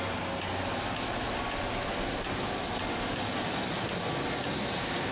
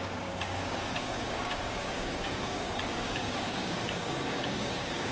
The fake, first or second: second